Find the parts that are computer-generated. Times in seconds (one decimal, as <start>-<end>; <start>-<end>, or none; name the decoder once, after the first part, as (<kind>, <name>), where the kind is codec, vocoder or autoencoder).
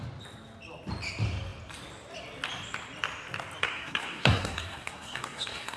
3.6-5.8 (codec, SNAC)